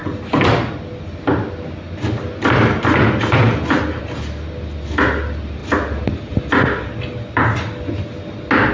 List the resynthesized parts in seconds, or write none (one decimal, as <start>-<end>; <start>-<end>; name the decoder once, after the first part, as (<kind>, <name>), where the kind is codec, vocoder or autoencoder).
none